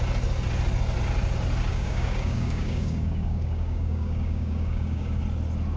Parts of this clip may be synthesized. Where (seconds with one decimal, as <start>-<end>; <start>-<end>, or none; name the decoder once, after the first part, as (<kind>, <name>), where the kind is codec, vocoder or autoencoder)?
1.7-5.2 (codec, DAC)